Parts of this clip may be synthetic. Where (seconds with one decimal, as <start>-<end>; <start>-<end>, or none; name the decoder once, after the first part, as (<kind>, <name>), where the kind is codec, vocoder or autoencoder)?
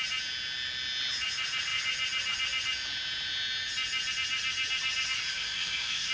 5.3-6.1 (autoencoder, DAC-VAE)